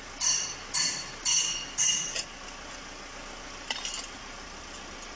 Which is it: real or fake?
real